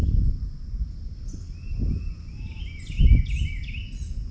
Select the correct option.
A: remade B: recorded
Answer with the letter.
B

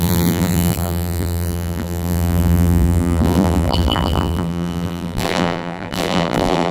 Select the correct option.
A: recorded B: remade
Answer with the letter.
B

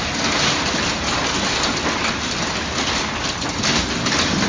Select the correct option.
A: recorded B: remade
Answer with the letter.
A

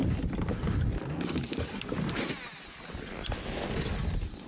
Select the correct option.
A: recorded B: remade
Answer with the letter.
A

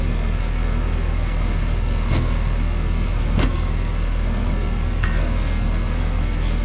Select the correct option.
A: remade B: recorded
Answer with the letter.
A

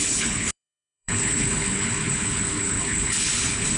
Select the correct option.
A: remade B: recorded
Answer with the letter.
A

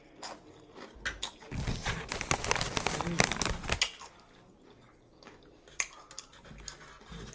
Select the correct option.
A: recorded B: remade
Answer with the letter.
A